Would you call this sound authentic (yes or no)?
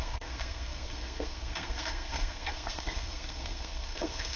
no